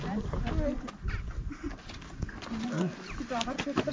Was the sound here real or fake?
real